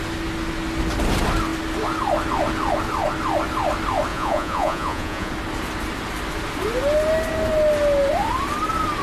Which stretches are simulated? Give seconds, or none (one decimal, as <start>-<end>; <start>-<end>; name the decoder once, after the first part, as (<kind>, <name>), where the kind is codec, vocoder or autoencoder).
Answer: 4.1-5.3 (vocoder, Vocos)